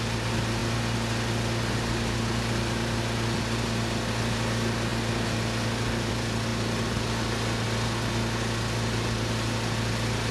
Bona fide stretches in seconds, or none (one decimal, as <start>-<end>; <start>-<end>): 0.0-10.3